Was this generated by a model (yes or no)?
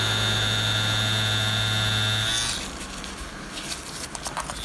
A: no